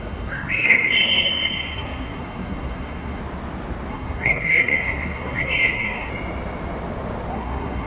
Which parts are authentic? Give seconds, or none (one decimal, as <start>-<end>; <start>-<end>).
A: 3.2-3.9; 6.1-7.3